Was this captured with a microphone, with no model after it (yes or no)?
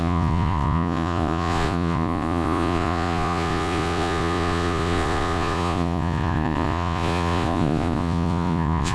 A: no